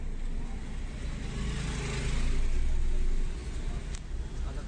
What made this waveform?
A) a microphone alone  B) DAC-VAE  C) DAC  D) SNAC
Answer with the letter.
A